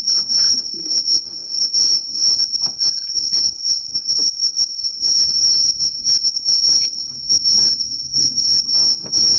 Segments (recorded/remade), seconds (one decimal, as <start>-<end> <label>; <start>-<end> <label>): 0.0-9.4 remade